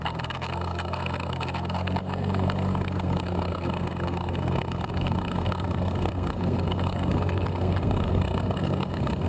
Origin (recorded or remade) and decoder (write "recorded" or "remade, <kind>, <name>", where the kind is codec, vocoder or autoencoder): remade, codec, SNAC